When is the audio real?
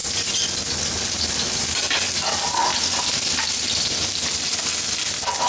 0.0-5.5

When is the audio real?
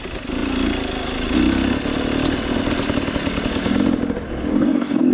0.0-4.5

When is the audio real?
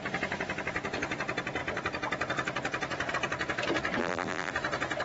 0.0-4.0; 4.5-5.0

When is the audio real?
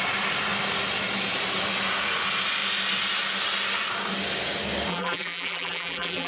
0.0-4.9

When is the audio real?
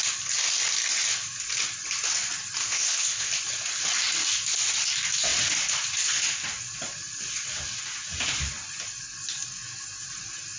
0.0-2.6; 3.3-10.6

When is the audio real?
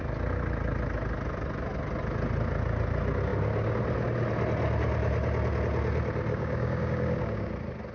0.0-6.3; 7.5-7.9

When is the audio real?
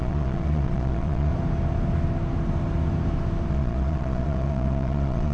1.3-3.5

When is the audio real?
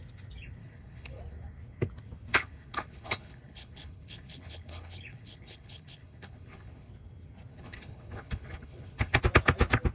0.0-0.6; 1.2-2.3; 6.9-7.5; 9.2-9.9